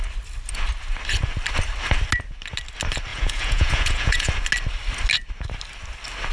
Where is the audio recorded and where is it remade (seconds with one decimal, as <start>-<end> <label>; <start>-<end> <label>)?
0.0-3.1 recorded; 3.1-4.3 remade; 4.3-6.3 recorded